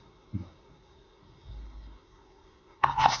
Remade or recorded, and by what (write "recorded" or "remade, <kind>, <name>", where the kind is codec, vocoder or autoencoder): remade, codec, SNAC